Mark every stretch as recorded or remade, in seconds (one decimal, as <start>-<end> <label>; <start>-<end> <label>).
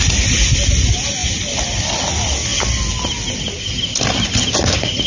0.0-5.1 recorded